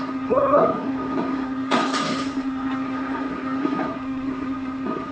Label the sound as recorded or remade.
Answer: remade